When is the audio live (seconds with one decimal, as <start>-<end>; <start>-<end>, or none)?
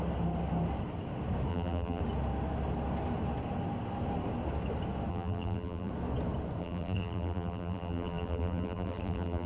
0.0-1.5; 2.0-5.1; 5.9-6.6